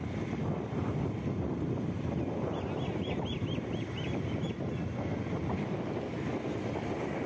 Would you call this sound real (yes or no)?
yes